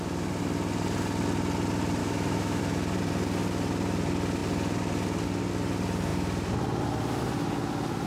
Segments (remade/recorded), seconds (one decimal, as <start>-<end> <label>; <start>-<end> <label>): 0.0-2.0 recorded; 2.0-2.6 remade; 2.6-8.1 recorded